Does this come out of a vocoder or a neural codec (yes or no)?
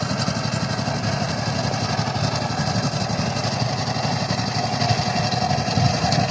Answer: no